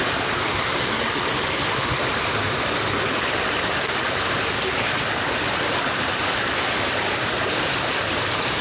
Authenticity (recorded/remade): recorded